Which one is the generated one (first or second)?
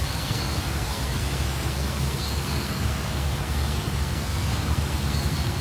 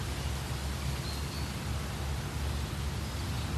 first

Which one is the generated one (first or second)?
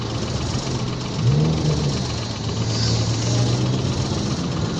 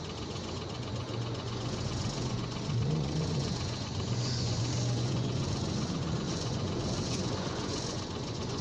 second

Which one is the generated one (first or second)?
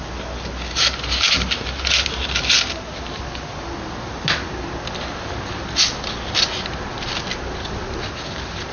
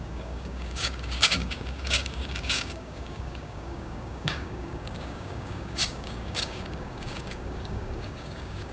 second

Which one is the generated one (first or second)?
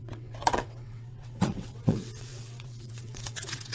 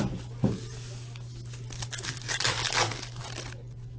first